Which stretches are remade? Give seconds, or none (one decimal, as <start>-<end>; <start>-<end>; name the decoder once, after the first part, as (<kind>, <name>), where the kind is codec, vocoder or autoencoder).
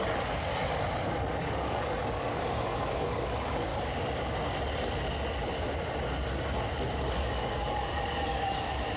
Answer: 0.0-0.6 (codec, DAC); 1.4-3.7; 7.1-9.0